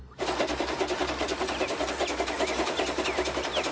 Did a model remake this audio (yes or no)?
no